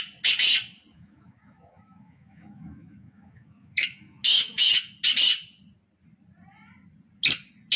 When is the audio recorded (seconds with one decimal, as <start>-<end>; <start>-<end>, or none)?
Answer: 0.0-0.9; 4.7-7.8